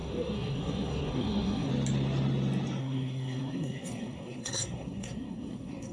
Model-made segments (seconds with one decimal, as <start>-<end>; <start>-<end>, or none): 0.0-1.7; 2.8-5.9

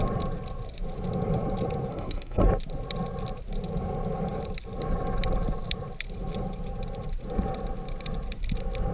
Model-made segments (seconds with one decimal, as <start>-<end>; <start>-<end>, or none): 1.9-2.4

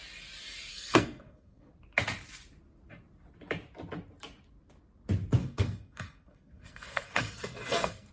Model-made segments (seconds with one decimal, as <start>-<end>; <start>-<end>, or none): 0.7-1.7; 5.4-8.1